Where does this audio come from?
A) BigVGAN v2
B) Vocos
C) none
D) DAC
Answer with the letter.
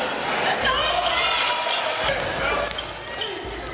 C